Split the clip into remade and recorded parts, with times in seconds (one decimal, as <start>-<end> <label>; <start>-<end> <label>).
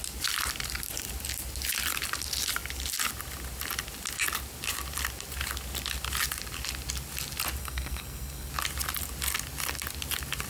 0.0-7.6 recorded; 7.6-8.5 remade; 8.5-10.5 recorded